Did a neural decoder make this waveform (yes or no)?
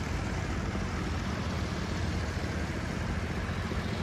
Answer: no